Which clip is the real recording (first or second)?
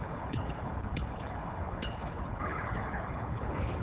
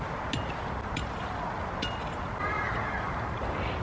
second